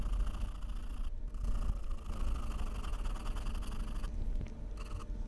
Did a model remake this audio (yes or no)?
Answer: no